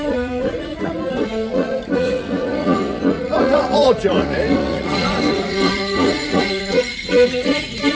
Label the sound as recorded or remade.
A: remade